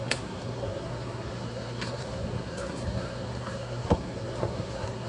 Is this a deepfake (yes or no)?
yes